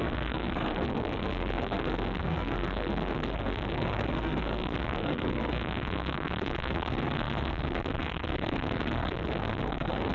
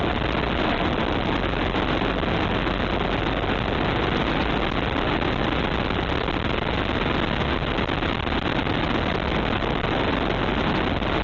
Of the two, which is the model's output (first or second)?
first